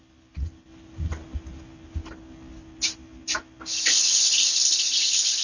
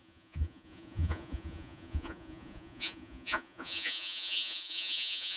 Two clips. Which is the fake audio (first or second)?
second